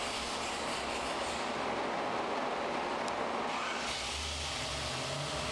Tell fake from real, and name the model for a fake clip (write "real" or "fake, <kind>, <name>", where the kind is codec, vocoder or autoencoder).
real